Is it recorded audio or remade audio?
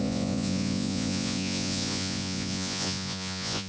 remade